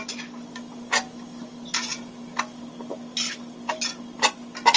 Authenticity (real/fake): real